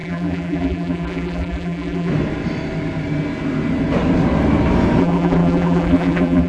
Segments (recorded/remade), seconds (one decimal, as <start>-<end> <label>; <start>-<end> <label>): 0.0-2.1 remade; 2.1-5.0 recorded; 5.0-6.5 remade